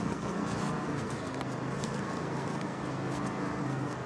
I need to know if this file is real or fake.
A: fake